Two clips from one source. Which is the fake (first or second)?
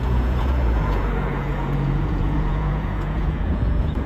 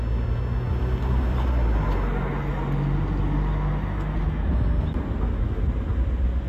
first